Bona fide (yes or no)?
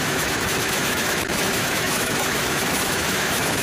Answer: no